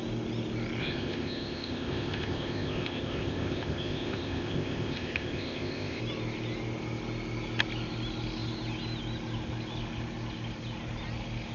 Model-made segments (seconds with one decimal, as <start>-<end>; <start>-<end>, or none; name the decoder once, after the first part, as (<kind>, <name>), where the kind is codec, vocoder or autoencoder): 0.8-6.0 (codec, ZipCodec)